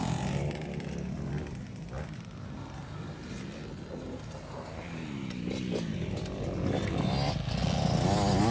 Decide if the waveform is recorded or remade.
recorded